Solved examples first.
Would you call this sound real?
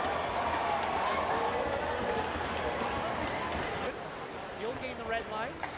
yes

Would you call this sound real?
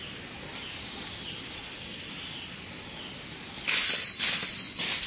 yes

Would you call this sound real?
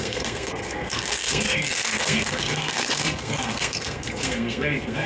no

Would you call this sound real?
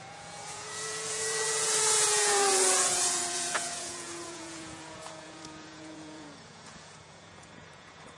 no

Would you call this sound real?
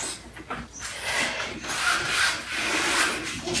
yes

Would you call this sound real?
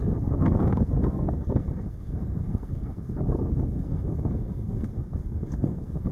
no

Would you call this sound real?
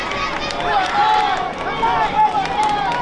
yes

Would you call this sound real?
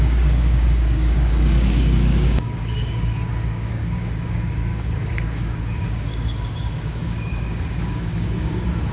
no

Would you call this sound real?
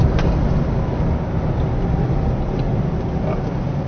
yes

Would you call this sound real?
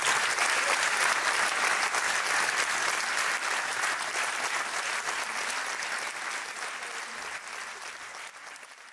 yes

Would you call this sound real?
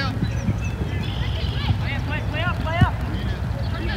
yes